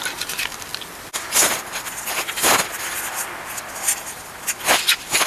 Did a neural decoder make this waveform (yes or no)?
no